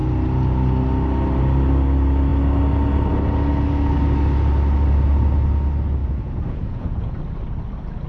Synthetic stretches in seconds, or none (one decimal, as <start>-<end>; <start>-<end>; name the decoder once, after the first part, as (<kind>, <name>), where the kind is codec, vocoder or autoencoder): 6.0-7.2 (vocoder, Vocos)